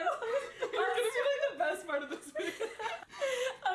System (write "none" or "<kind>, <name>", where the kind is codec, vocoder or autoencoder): none